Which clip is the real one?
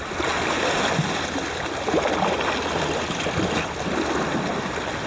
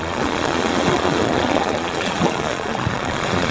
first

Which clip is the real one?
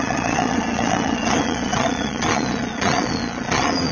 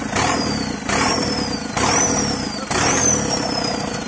second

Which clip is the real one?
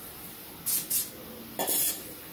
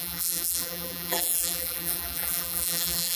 first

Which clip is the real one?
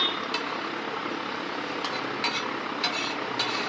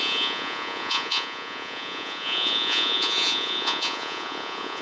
first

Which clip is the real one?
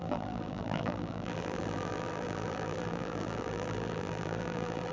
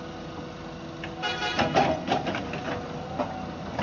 second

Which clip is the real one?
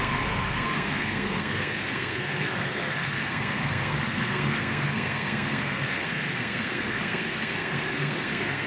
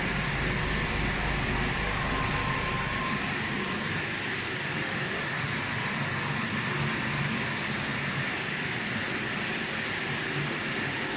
second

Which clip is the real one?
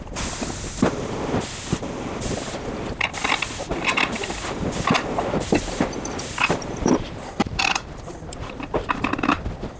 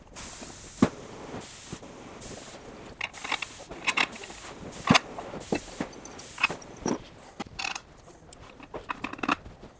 second